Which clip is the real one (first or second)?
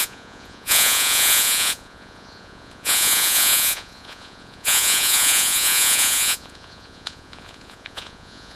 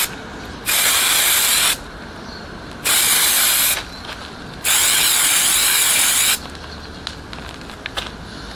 second